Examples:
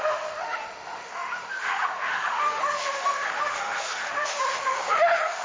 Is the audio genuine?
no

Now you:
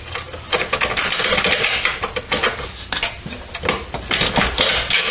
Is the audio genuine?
yes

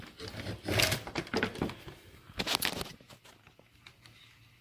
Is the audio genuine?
yes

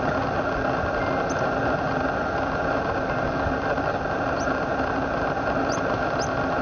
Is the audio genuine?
yes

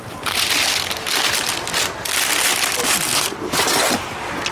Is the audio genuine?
yes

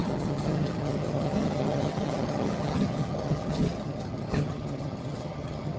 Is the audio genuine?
no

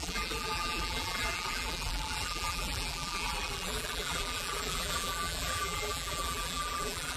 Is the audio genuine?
no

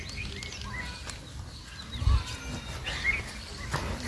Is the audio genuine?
yes